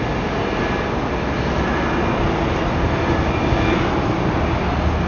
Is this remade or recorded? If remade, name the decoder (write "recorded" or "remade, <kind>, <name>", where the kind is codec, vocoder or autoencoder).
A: recorded